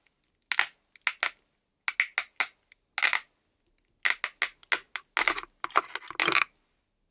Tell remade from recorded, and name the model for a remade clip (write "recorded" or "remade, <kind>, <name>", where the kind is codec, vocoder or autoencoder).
recorded